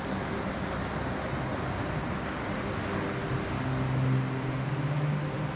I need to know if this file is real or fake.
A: real